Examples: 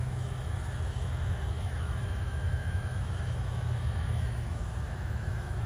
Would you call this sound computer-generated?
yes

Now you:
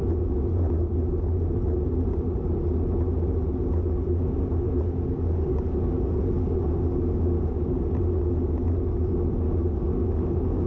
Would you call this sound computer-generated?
no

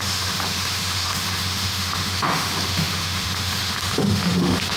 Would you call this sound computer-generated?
yes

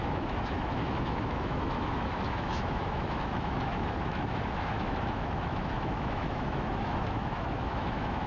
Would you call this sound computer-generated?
yes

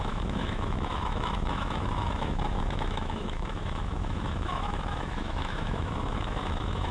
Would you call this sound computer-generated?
yes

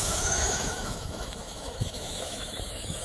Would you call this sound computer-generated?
yes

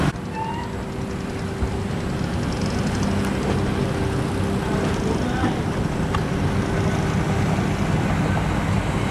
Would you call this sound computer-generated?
no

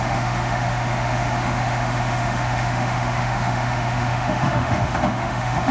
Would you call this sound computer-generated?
yes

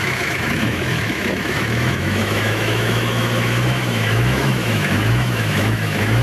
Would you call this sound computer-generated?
yes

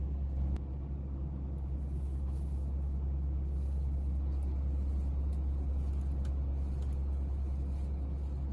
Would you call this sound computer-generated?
no